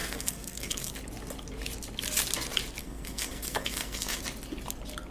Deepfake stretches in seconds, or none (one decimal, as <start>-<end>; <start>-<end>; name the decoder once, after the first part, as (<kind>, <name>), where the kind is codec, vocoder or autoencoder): 0.0-0.9 (codec, SNAC); 2.8-4.2